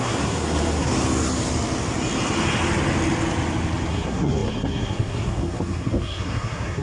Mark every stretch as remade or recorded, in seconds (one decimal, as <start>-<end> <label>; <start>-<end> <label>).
0.0-0.9 remade; 0.9-3.9 recorded; 3.9-6.8 remade